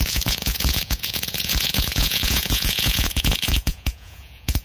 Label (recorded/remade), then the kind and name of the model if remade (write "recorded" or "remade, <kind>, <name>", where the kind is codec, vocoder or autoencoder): remade, vocoder, Vocos